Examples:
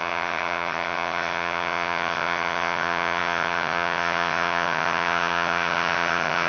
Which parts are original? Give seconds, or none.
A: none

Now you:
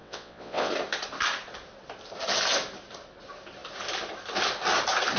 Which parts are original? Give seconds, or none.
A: 0.7-5.2

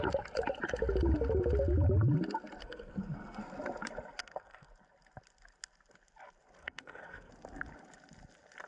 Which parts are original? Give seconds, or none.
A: 0.0-2.6; 3.4-4.2; 4.7-6.6; 7.3-8.7

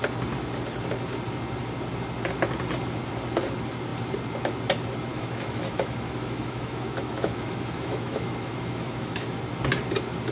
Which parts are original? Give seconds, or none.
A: 0.0-5.1; 9.4-10.3